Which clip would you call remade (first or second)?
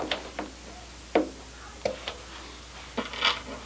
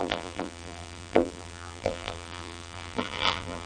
second